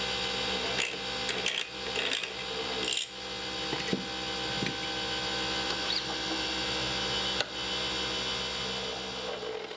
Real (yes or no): yes